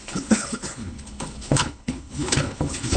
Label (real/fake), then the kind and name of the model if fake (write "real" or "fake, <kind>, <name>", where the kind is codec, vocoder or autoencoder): fake, codec, HILCodec